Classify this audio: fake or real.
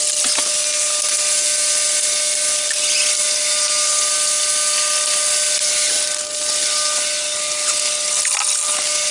real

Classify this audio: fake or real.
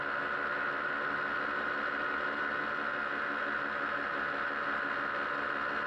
real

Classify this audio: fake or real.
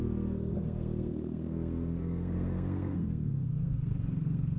fake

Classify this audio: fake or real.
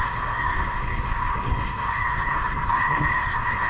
fake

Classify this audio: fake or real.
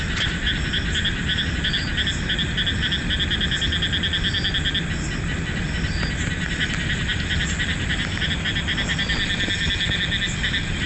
real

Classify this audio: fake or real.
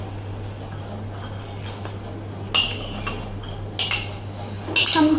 real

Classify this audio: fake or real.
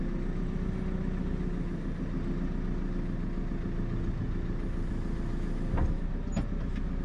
real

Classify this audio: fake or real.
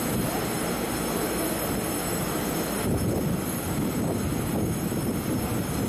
real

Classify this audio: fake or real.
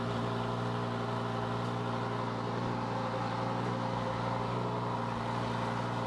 real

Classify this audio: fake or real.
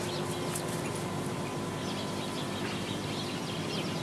real